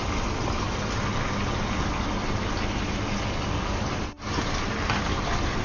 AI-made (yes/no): no